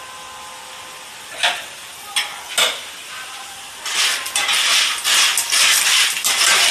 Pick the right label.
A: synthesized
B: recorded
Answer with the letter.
B